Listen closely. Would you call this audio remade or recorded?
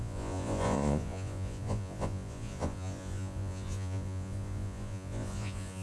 remade